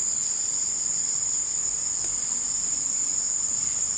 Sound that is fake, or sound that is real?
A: real